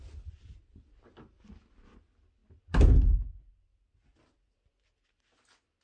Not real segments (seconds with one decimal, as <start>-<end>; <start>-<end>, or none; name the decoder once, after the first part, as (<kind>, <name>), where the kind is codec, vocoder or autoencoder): none